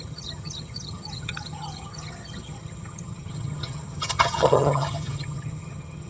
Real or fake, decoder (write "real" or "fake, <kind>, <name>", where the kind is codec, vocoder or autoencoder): fake, vocoder, HiFi-GAN